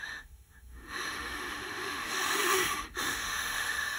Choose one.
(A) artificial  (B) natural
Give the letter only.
A